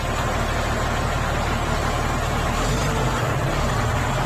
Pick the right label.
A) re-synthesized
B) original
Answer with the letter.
B